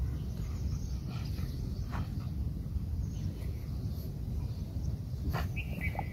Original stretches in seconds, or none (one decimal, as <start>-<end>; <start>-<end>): 0.0-6.1